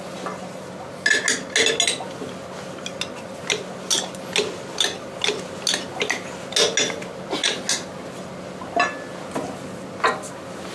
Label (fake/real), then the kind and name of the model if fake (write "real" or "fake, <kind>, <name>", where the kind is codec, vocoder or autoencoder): real